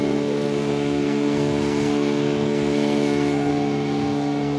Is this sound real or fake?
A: fake